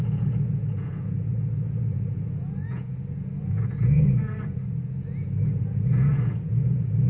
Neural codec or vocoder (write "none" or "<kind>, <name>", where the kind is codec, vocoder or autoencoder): vocoder, Vocos